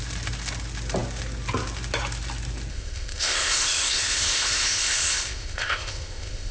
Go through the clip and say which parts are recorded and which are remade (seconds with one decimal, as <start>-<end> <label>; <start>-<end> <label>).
0.0-2.7 recorded; 2.7-6.5 remade